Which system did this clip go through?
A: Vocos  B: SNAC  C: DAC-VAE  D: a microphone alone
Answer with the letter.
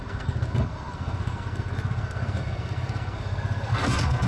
B